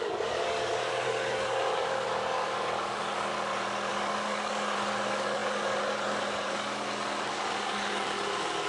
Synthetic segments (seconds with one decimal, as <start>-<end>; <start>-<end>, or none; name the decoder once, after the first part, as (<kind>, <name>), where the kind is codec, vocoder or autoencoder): 0.0-3.3 (codec, DAC); 3.9-8.7